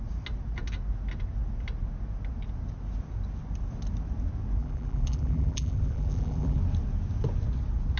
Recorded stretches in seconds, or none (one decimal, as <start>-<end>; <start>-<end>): 0.0-4.6; 6.6-8.0